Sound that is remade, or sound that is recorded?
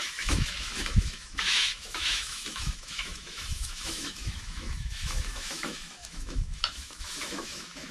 remade